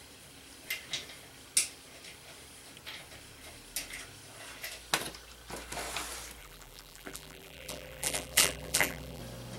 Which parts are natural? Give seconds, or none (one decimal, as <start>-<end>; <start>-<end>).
0.0-6.4; 9.2-9.6